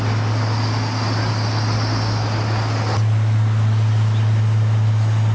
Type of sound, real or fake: real